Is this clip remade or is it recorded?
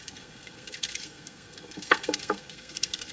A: remade